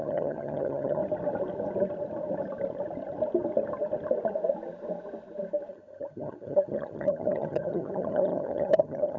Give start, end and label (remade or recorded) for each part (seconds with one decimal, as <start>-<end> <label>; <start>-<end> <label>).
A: 0.0-1.0 remade; 1.0-5.7 recorded; 5.7-9.2 remade